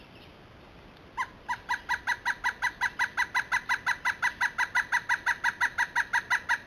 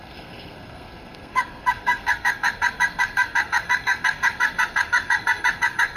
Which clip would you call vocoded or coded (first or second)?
second